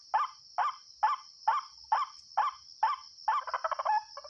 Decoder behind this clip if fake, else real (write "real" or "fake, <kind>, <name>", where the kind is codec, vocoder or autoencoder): real